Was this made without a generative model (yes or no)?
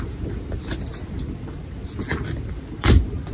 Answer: yes